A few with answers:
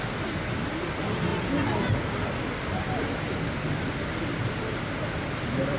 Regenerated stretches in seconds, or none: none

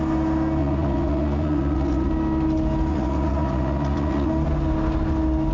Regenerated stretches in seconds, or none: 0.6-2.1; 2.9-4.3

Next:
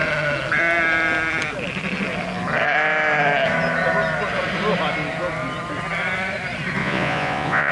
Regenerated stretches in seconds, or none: 6.8-7.7

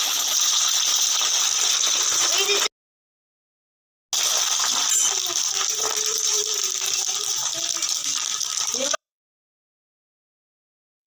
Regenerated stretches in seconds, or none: 0.0-0.9; 5.5-8.0; 8.6-11.1

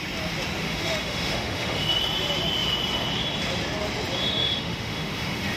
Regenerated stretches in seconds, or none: 0.6-2.0; 4.2-5.6

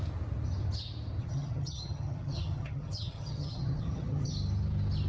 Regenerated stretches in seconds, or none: 1.2-4.3